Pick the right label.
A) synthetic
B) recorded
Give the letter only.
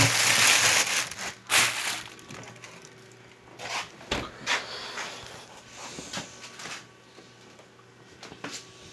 B